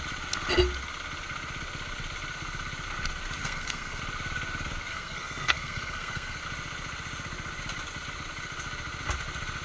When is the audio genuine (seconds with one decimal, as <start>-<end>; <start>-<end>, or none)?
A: 0.0-3.4; 4.0-4.9; 6.4-9.6